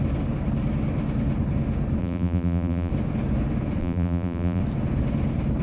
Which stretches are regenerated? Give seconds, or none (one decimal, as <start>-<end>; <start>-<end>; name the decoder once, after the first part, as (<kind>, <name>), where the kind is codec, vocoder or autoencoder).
2.0-2.9 (vocoder, BigVGAN v2); 3.8-4.6